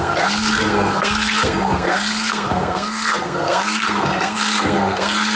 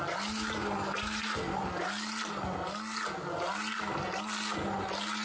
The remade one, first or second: first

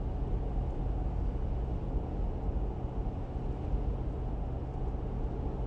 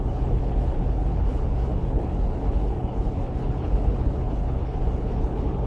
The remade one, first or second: second